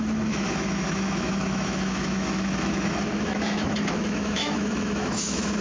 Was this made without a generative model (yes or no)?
no